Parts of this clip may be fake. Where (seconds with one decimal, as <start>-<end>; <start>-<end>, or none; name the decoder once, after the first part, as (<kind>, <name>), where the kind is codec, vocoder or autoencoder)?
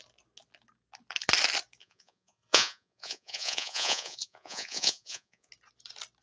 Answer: 1.8-5.5 (vocoder, Vocos)